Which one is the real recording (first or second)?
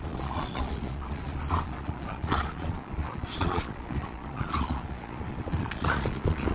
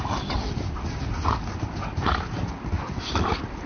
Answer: second